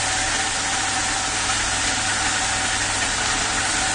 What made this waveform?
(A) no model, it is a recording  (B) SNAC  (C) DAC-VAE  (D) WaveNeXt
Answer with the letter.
A